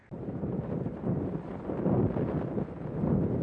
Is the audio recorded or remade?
recorded